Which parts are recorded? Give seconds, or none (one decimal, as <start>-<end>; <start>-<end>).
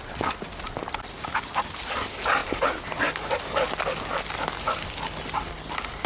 0.0-6.1